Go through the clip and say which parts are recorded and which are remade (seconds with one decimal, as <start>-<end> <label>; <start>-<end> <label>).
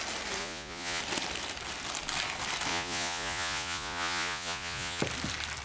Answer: 0.0-0.4 recorded; 0.4-1.0 remade; 1.0-2.7 recorded; 2.7-5.0 remade; 5.0-5.6 recorded